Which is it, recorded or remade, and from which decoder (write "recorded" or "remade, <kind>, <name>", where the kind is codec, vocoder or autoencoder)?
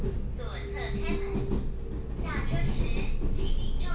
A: recorded